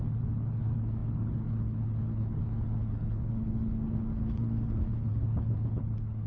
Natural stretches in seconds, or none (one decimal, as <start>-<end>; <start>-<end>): none